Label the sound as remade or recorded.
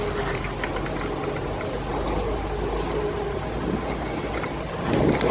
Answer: recorded